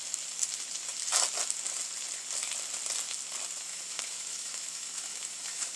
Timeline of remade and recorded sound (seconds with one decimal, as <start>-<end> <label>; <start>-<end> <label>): 0.0-3.7 recorded; 3.7-5.8 remade